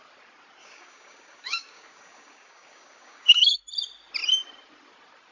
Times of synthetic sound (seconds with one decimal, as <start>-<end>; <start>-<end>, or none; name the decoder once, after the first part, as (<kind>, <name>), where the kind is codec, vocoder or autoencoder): 0.6-3.6 (codec, DAC)